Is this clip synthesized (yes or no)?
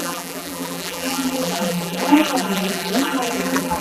yes